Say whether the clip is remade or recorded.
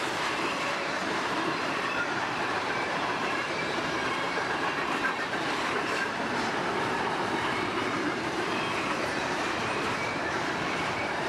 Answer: remade